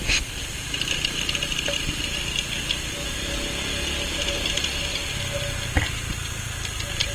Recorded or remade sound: recorded